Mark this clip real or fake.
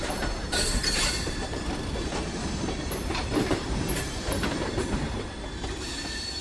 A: fake